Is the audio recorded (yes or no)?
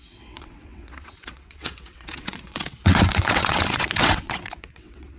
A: no